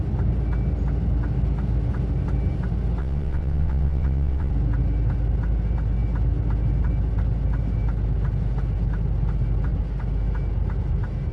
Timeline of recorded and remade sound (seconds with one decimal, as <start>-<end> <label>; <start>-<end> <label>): 0.0-3.0 recorded; 3.0-4.5 remade; 4.5-11.3 recorded